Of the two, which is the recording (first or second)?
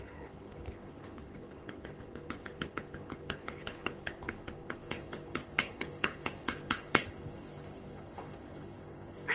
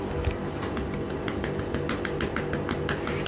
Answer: second